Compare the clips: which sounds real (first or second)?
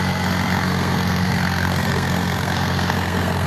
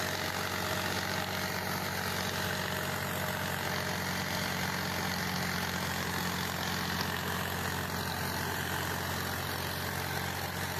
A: second